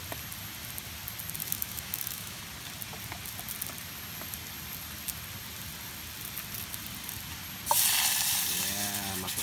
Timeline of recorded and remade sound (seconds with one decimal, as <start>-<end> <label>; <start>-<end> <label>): 0.0-1.4 recorded; 1.4-2.4 remade; 2.4-9.4 recorded